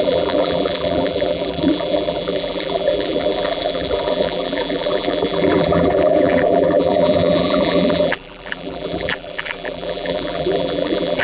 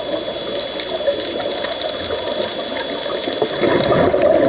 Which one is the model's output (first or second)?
first